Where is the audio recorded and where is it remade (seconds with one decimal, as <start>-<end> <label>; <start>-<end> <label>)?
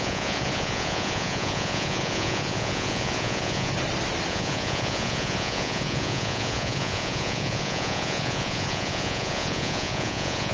0.0-3.7 remade; 3.7-4.3 recorded; 4.3-10.5 remade